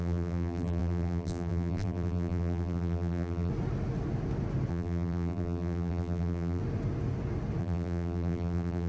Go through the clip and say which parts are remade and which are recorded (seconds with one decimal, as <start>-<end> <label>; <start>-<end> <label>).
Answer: 0.0-3.5 remade; 3.5-4.7 recorded; 4.7-6.6 remade; 6.6-7.6 recorded; 7.6-8.9 remade

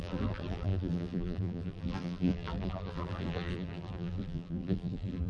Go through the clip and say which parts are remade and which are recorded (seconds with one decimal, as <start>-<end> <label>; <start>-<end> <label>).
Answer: 0.0-5.3 remade